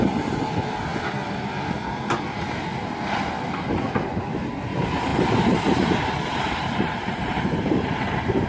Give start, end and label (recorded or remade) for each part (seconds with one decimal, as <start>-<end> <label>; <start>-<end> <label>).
0.0-0.9 remade; 0.9-4.6 recorded; 4.6-5.1 remade; 5.1-6.4 recorded; 6.4-8.5 remade